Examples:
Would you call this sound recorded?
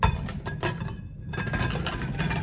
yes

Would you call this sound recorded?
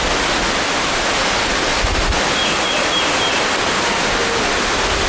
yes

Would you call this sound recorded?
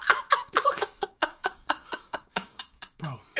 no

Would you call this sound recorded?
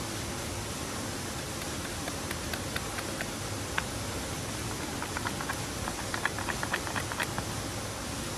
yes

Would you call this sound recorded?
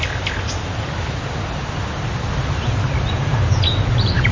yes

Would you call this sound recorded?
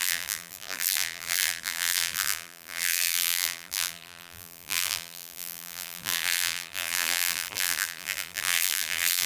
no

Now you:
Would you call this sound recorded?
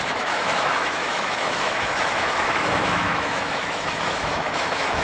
no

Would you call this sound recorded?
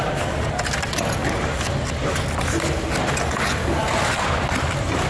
yes